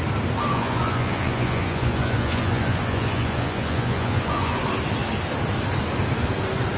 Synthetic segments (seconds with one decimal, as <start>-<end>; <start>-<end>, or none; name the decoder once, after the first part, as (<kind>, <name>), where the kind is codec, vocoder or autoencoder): 0.5-4.6 (vocoder, Vocos)